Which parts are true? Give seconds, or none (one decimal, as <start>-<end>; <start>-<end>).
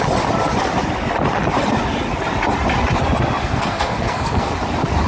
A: 0.0-3.4; 4.5-5.1